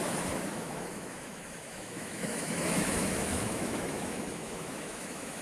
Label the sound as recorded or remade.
remade